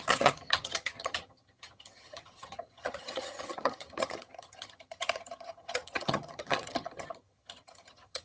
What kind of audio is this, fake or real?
fake